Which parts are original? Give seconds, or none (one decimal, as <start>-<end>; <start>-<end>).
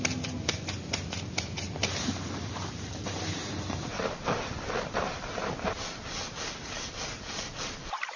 none